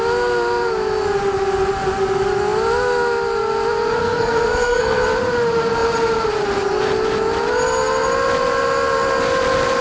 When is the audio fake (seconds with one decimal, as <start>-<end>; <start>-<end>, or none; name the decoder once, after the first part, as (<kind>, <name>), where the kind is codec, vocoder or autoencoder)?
4.0-5.0 (codec, SNAC)